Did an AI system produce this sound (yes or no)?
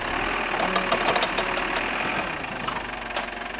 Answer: no